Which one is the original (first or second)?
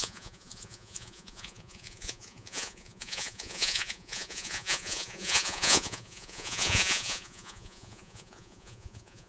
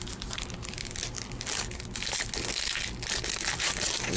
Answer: second